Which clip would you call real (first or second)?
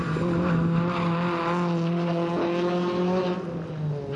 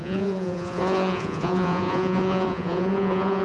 first